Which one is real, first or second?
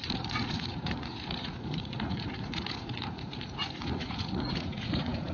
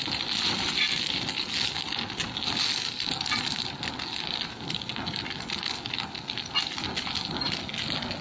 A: second